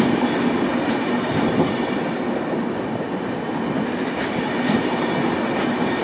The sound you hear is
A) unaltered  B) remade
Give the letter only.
A